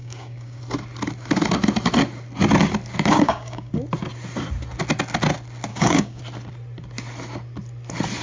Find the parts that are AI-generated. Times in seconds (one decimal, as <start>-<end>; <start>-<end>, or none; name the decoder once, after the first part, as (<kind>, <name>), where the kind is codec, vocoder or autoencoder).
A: 0.0-0.6 (codec, DAC); 3.1-3.7; 5.7-6.2